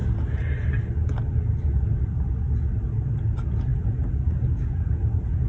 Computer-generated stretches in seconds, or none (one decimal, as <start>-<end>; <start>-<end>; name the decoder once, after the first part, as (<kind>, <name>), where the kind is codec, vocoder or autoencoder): 3.7-5.5 (vocoder, Vocos)